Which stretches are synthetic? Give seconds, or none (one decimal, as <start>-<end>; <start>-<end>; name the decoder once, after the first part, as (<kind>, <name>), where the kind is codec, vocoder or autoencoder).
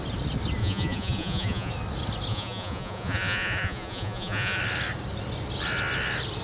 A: 0.6-1.7 (vocoder, Vocos); 2.3-4.6